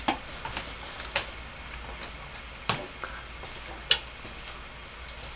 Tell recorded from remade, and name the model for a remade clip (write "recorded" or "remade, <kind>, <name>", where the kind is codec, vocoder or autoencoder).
recorded